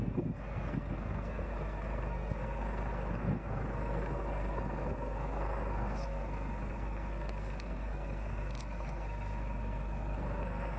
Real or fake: fake